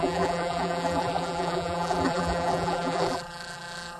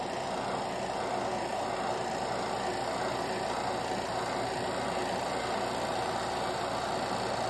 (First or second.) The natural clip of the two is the second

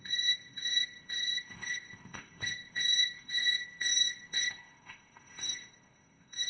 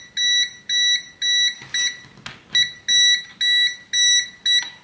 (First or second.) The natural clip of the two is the second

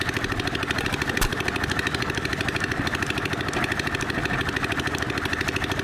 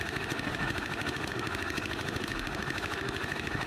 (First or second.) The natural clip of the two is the first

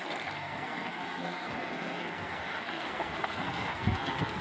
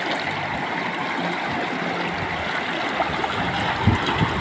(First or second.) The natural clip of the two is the second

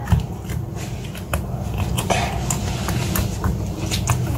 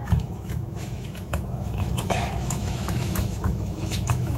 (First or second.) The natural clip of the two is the first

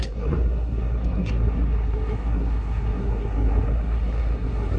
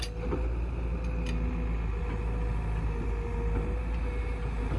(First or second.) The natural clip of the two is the second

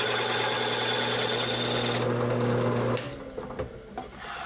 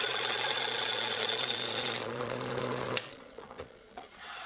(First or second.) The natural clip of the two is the first